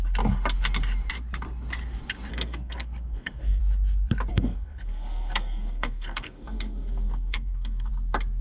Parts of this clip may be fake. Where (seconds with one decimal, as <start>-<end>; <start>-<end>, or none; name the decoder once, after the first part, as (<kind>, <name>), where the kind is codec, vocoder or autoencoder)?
2.3-3.6 (codec, SNAC); 4.3-7.9